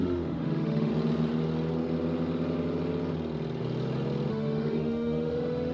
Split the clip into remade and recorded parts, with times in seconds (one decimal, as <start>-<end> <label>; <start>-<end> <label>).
0.0-0.9 remade; 0.9-4.3 recorded; 4.3-5.7 remade